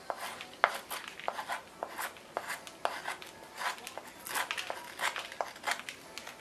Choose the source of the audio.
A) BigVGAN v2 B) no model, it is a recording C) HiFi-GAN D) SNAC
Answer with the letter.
B